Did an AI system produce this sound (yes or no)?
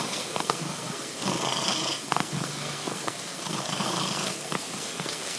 yes